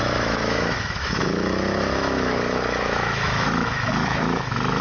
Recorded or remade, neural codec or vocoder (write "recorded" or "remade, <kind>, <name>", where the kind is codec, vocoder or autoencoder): remade, autoencoder, DAC-VAE